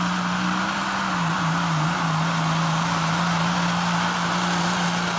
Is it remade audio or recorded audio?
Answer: recorded